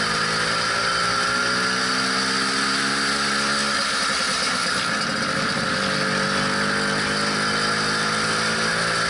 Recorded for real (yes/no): yes